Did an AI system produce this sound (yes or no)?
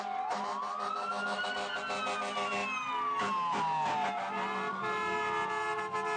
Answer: no